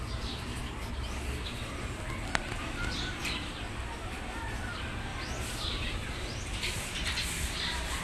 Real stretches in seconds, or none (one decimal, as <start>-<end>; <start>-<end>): 0.0-5.1